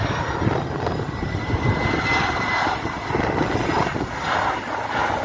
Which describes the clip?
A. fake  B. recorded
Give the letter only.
B